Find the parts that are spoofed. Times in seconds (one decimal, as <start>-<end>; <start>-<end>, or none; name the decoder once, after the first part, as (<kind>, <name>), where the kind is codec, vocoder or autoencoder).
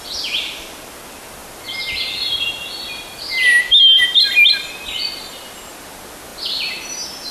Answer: none